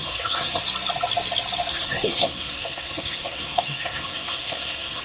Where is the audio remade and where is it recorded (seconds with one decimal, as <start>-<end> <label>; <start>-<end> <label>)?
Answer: 0.0-0.6 remade; 0.6-1.7 recorded; 1.7-5.0 remade